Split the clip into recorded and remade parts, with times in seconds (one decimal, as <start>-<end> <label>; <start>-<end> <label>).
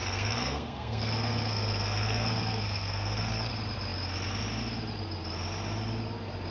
0.0-3.5 remade; 3.5-6.5 recorded